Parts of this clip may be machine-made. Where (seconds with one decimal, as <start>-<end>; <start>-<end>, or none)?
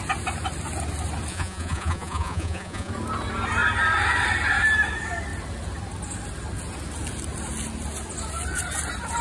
1.3-2.9